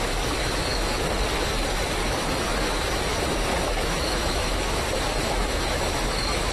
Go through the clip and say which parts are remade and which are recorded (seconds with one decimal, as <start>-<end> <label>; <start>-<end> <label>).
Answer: 0.0-0.4 recorded; 0.4-1.1 remade; 1.1-2.0 recorded; 2.0-3.0 remade; 3.0-3.5 recorded; 3.5-4.8 remade; 4.8-5.2 recorded; 5.2-6.5 remade